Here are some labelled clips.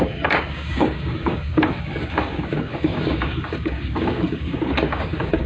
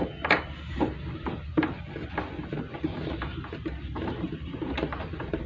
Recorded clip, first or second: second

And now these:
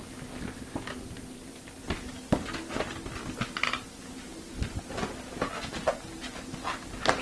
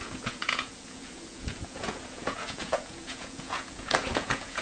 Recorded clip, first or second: first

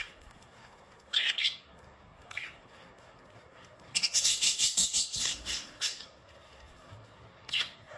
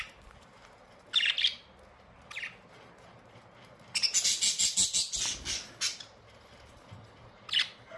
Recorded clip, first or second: second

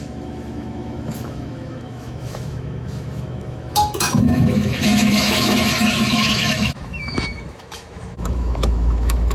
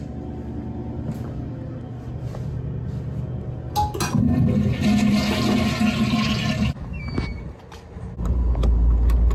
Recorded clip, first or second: second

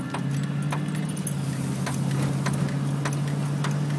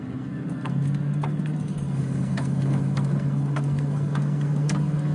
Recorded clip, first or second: first